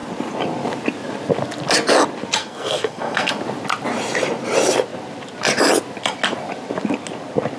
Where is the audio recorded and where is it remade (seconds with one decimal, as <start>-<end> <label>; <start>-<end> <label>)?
0.0-2.4 recorded; 2.4-3.3 remade; 3.3-7.6 recorded